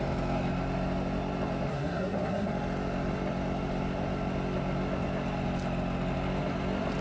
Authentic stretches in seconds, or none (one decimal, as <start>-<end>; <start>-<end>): 0.0-1.7; 2.5-7.0